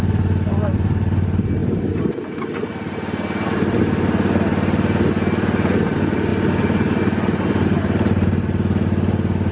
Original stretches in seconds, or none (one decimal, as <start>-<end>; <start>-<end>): 0.0-9.5